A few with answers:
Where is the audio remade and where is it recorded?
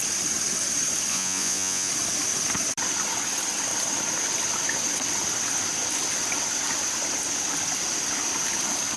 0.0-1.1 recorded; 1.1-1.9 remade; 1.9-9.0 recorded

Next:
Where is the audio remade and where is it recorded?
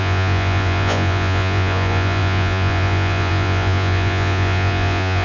0.0-5.2 remade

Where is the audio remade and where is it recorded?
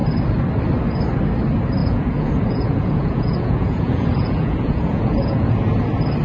0.0-1.8 recorded; 1.8-5.5 remade; 5.5-6.2 recorded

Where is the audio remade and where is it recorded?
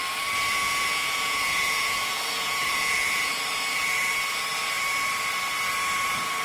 0.0-0.5 recorded; 0.5-3.3 remade; 3.3-6.4 recorded